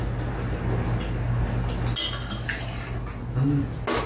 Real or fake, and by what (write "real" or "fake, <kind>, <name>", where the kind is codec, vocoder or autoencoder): real